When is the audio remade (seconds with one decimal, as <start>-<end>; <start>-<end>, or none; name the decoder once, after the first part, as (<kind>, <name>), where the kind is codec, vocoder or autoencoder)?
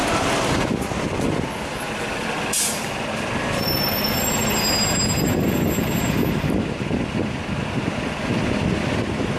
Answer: none